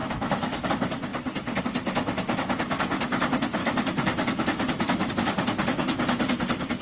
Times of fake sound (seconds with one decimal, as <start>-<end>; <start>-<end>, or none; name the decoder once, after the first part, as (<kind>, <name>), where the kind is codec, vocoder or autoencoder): 0.0-0.7 (autoencoder, DAC-VAE); 3.6-5.1

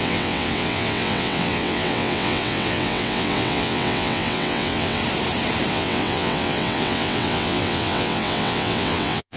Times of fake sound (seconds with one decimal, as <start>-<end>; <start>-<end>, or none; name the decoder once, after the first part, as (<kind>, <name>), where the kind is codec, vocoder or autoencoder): 0.0-5.0 (vocoder, WaveNeXt); 5.7-9.4

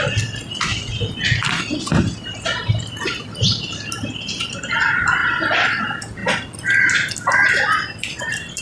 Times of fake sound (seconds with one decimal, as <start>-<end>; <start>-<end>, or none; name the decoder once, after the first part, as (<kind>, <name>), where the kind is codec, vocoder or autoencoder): none

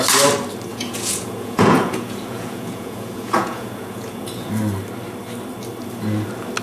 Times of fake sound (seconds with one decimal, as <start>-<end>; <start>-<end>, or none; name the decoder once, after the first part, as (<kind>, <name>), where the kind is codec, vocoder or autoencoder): 0.7-4.5 (vocoder, Vocos)

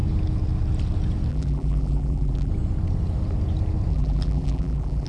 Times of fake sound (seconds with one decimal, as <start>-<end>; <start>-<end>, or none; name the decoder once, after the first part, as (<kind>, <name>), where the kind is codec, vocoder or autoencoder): 1.3-2.5 (vocoder, BigVGAN v2); 3.9-5.1